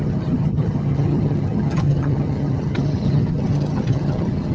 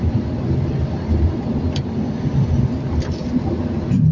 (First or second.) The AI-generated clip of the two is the first